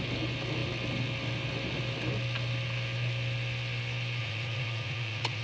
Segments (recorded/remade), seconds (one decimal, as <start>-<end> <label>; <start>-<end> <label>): 0.0-4.2 recorded; 4.2-5.4 remade